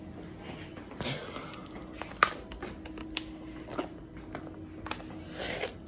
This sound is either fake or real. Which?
real